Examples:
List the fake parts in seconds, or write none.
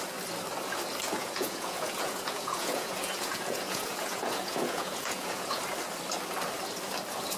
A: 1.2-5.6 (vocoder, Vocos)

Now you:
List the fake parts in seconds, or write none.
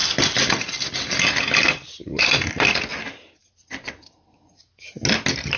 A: 2.0-3.9 (vocoder, BigVGAN v2)